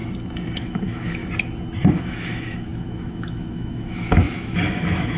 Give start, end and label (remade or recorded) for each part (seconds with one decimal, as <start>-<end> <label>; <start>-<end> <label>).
0.0-0.6 recorded; 0.6-1.2 remade; 1.2-1.8 recorded; 1.8-5.2 remade